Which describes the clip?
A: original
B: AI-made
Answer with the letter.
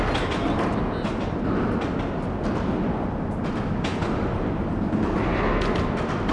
A